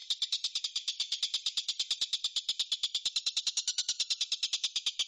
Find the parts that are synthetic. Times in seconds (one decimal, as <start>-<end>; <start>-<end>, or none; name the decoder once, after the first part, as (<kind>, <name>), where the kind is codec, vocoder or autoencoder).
none